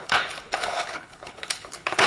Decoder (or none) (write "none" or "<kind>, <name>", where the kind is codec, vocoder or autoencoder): codec, HILCodec